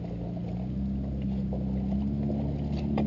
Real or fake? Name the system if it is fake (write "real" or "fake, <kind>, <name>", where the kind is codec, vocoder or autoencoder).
real